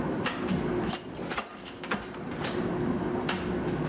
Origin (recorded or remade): recorded